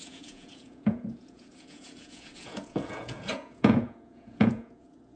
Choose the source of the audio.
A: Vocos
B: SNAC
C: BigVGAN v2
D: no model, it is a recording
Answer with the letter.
A